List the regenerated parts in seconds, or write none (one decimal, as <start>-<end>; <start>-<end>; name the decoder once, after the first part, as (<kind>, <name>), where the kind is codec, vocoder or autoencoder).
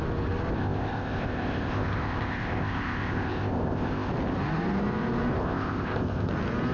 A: 0.6-4.1 (codec, ZipCodec); 5.4-6.3